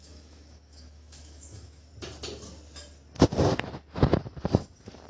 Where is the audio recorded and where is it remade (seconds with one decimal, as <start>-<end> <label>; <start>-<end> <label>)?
0.0-1.9 remade; 1.9-5.1 recorded